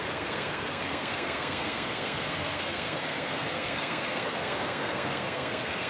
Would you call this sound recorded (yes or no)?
no